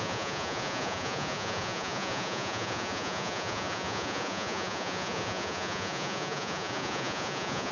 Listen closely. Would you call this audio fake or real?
fake